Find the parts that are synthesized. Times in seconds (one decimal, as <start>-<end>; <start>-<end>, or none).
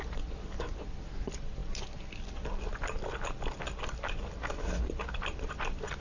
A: none